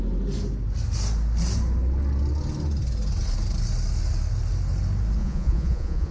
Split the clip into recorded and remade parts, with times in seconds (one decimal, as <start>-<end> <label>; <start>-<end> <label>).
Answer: 0.0-5.2 recorded; 5.2-6.1 remade